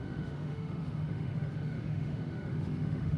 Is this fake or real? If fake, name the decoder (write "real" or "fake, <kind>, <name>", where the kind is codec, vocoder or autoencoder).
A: fake, autoencoder, DAC-VAE